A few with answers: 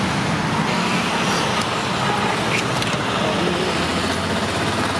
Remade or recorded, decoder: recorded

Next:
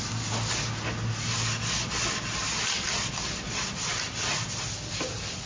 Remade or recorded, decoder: recorded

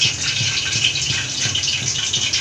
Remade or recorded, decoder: recorded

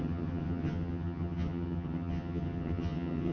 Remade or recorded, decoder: remade, vocoder, HiFi-GAN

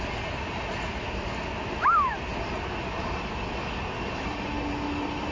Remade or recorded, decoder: recorded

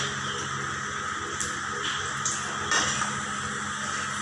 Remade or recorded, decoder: recorded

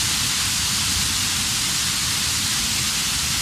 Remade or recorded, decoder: recorded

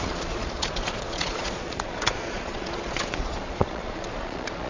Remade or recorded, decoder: remade, vocoder, Vocos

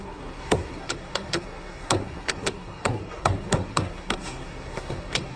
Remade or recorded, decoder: remade, codec, SNAC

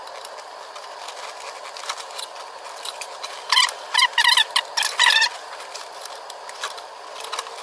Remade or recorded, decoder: recorded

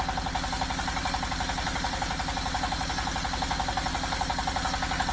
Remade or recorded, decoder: recorded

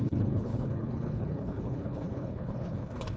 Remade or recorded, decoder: remade, codec, HILCodec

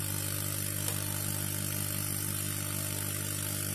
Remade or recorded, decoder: recorded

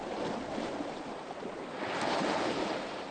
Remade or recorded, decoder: recorded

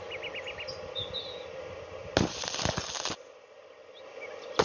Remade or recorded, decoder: recorded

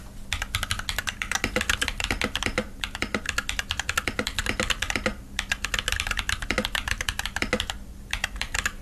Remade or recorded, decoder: recorded